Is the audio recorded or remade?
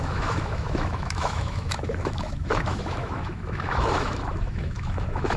remade